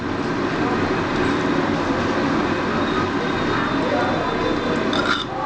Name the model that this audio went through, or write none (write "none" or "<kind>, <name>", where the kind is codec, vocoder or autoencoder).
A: none